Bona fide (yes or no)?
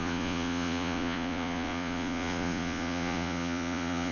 no